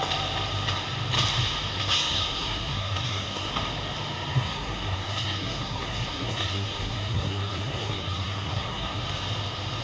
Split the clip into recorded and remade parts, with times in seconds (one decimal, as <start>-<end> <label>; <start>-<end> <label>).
0.0-1.7 recorded; 1.7-3.5 remade; 3.5-4.3 recorded; 4.3-9.0 remade; 9.0-9.8 recorded